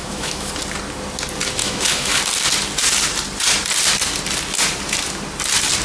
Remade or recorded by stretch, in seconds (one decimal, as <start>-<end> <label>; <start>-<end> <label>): 0.0-0.5 remade; 0.5-1.6 recorded; 1.6-2.2 remade; 2.2-5.8 recorded